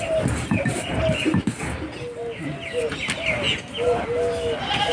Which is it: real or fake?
real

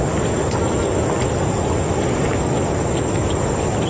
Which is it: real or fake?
real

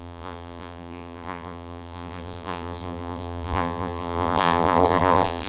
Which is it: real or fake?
fake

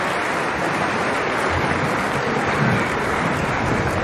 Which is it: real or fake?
fake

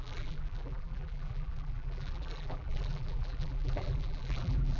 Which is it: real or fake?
fake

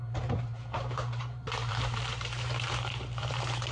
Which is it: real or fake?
fake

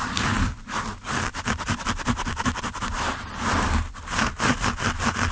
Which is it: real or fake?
fake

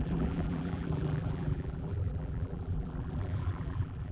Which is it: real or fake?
fake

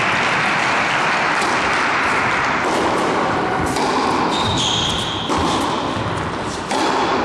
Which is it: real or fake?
real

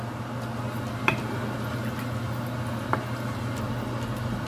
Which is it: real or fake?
real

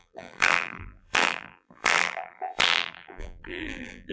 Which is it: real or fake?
fake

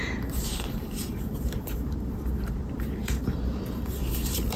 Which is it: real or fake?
fake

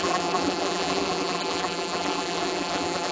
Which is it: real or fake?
fake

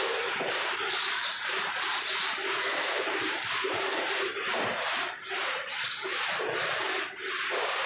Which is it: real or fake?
fake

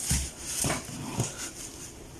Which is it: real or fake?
real